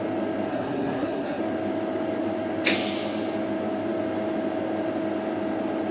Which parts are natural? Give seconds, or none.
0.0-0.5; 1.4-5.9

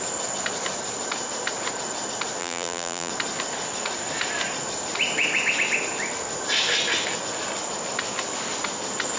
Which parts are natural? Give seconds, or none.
0.0-2.4; 3.1-9.2

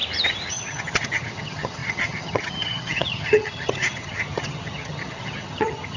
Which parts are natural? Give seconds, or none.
0.0-0.5

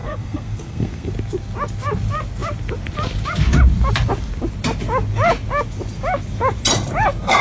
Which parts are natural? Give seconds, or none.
1.1-7.4

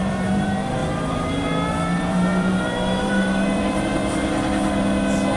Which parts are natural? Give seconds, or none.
4.0-5.4

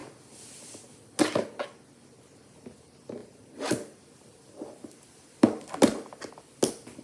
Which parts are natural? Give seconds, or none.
0.6-3.2; 6.3-7.0